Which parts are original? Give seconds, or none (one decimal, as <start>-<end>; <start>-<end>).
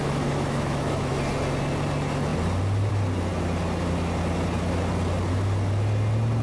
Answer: 1.1-6.4